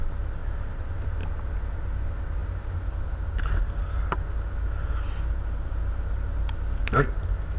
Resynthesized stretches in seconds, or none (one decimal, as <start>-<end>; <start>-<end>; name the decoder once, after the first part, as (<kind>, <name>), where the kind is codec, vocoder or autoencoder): 0.4-1.0 (vocoder, BigVGAN v2)